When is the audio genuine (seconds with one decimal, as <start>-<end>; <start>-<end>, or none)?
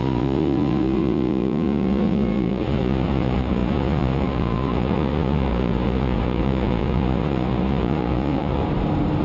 8.6-9.2